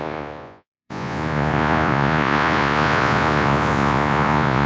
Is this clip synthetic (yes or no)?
yes